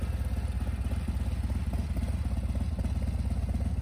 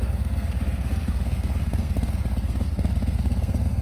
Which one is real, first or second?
first